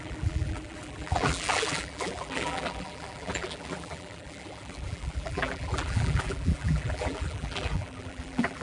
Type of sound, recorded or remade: remade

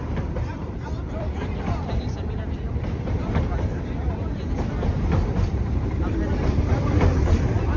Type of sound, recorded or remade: remade